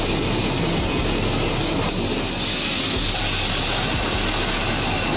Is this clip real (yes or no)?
yes